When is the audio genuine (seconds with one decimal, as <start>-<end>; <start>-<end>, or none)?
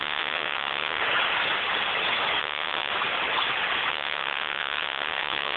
1.0-2.4; 2.9-3.9